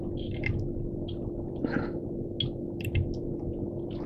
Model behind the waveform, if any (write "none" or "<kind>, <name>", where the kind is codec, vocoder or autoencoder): none